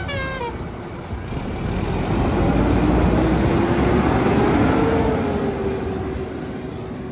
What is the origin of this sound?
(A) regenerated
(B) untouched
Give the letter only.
B